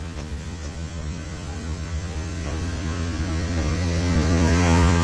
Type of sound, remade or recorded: remade